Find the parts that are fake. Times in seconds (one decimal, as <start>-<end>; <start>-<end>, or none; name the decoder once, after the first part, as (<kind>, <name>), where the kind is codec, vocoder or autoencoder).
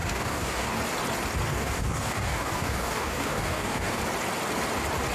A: 0.0-0.8 (codec, DAC); 1.5-4.0